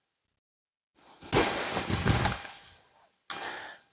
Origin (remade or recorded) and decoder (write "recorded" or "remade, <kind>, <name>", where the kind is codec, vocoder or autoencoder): recorded